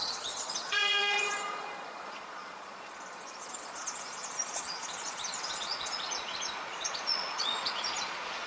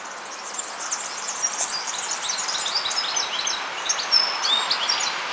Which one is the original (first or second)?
second